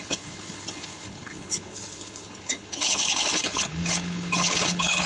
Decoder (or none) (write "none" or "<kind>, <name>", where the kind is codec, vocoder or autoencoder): codec, HILCodec